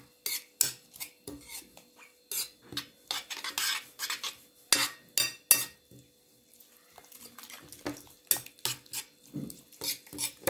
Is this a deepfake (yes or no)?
no